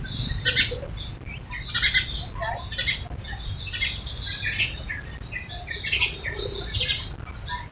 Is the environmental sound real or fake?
real